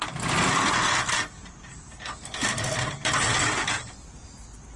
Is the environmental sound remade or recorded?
recorded